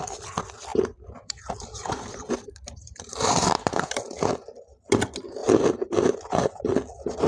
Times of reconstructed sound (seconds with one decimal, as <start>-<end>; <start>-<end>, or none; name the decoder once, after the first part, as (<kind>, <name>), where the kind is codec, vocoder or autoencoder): 0.7-4.3 (vocoder, BigVGAN v2); 5.4-6.5